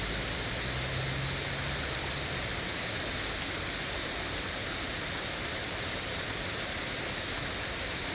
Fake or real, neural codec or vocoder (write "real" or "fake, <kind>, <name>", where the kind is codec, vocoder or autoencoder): real